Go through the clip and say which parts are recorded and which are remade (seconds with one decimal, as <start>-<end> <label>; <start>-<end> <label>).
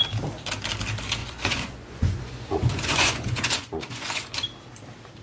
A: 0.0-1.2 recorded; 1.2-4.3 remade; 4.3-5.2 recorded